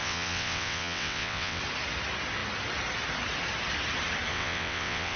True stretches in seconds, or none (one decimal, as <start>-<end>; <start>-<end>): 1.6-4.3